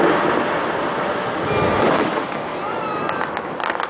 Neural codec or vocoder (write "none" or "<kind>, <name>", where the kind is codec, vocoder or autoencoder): none